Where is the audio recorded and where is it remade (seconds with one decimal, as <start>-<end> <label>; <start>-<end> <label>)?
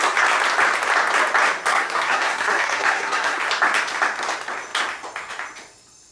0.0-1.7 recorded; 1.7-3.4 remade; 3.4-6.1 recorded